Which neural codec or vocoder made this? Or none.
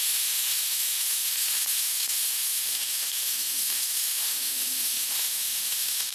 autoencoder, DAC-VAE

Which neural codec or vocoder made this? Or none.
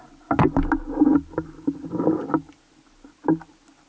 none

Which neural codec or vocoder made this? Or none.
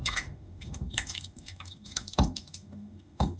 autoencoder, DAC-VAE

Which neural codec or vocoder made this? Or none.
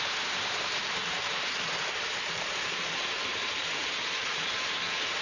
vocoder, BigVGAN v2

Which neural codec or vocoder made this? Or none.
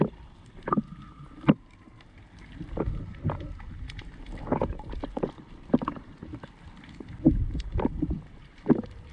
none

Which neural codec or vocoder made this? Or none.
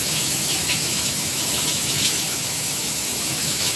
autoencoder, DAC-VAE